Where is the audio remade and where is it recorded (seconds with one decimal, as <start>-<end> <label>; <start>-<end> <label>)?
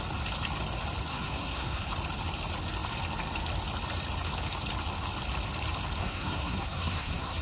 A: 0.0-1.1 recorded; 1.1-1.9 remade; 1.9-6.0 recorded; 6.0-7.4 remade